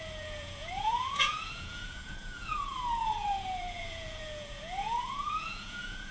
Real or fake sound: fake